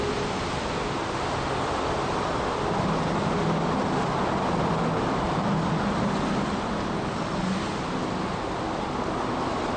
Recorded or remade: recorded